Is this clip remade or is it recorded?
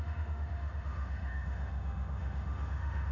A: remade